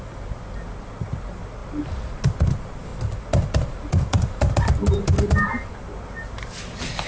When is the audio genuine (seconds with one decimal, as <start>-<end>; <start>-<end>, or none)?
0.0-1.6; 2.2-2.9; 5.2-7.1

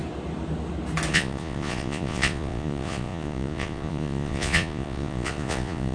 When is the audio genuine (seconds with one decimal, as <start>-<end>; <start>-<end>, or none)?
0.0-1.1

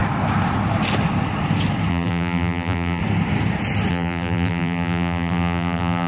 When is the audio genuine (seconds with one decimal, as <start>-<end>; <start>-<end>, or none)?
0.0-1.9; 3.0-3.9

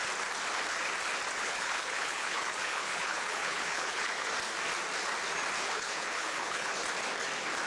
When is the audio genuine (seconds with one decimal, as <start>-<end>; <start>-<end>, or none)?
0.0-1.4; 4.3-5.6; 6.7-7.7

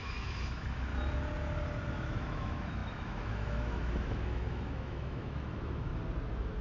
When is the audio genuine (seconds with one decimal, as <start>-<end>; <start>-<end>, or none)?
0.9-1.9; 5.9-6.6